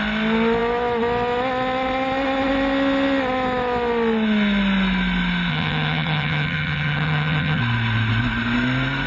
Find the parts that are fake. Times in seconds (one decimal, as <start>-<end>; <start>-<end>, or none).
5.5-7.6